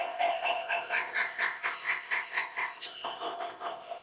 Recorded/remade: remade